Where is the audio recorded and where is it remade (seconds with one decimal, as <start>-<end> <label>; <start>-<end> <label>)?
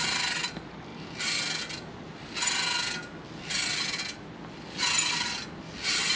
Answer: 0.0-6.2 recorded